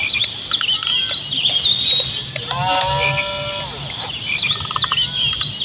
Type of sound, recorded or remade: recorded